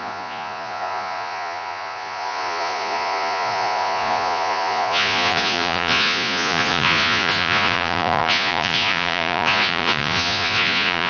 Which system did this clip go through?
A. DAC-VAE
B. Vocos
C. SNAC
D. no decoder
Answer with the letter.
B